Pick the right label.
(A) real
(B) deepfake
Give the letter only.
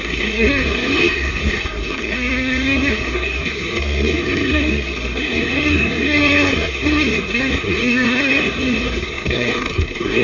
B